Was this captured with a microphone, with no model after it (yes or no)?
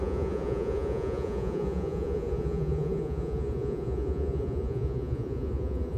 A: no